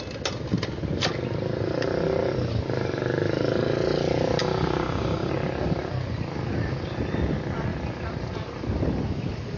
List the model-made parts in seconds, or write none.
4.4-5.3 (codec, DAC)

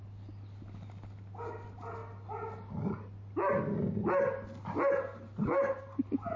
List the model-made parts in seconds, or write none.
none

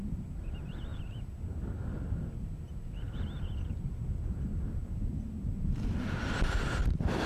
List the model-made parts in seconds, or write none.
none